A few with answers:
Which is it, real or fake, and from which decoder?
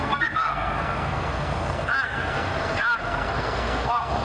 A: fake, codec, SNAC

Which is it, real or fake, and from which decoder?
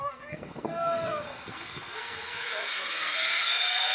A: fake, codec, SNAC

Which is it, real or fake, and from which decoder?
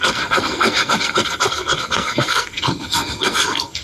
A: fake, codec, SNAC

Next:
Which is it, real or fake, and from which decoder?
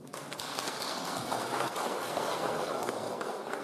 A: fake, codec, SNAC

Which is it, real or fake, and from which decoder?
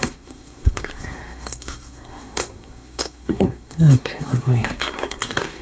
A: fake, codec, SNAC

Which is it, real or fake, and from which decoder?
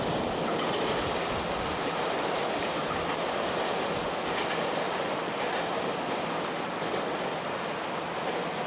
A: real